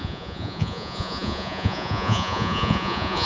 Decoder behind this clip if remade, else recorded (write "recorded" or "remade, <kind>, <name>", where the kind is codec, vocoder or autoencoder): remade, vocoder, Vocos